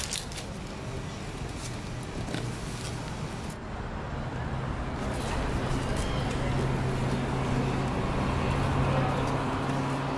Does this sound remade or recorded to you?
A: recorded